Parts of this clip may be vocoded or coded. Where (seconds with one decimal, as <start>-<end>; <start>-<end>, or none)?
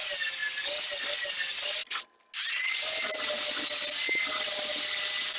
none